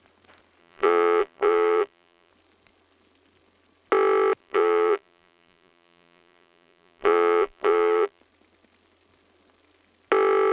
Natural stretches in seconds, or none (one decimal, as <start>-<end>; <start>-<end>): 0.0-0.6; 2.3-4.4; 8.2-10.5